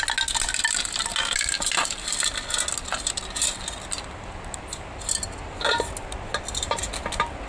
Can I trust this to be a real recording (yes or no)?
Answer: yes